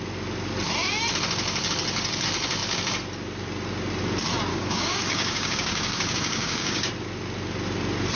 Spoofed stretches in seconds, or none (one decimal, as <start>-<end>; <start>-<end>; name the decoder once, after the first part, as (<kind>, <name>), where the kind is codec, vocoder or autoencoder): 4.5-6.9 (codec, DAC)